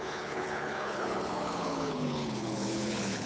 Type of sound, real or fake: fake